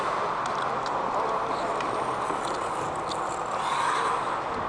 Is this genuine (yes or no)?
yes